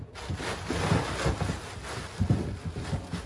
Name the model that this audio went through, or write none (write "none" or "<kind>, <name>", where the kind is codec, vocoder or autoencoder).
none